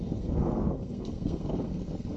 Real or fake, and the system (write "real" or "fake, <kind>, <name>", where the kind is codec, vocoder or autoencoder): fake, codec, SNAC